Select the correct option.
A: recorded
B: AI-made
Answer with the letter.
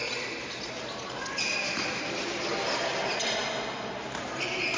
A